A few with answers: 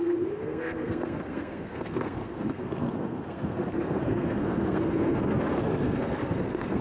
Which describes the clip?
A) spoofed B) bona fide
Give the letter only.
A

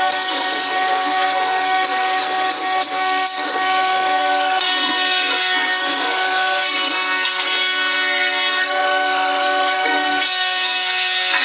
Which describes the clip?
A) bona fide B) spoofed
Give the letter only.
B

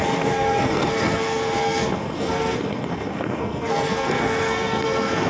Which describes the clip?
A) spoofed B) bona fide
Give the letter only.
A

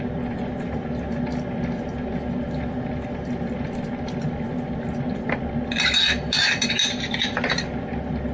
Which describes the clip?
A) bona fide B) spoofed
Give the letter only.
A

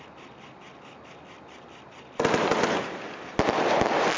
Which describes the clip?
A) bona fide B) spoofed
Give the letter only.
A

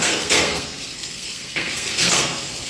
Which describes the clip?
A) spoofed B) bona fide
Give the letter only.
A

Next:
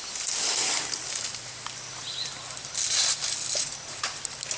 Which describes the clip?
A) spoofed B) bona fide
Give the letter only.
B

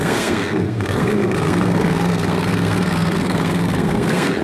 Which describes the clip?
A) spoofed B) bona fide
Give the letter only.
A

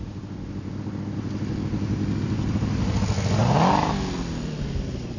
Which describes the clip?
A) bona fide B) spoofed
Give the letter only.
A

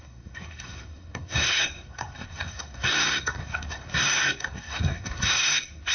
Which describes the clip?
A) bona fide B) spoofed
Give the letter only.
B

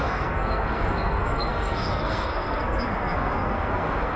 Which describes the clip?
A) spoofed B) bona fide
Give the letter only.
A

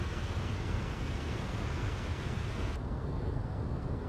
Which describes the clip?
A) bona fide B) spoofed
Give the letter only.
B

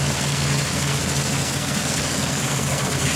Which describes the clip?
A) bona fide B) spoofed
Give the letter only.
B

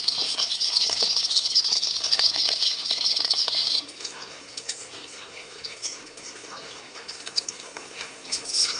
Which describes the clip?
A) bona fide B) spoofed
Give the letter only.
B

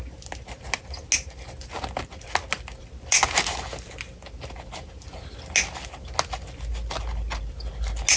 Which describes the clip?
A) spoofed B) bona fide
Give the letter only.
B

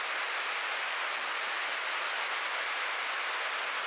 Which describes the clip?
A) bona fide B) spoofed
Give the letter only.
A